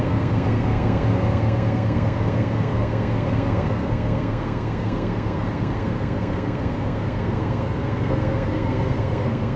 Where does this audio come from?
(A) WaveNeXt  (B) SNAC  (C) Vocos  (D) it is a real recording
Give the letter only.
B